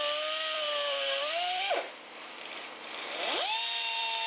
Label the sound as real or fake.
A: fake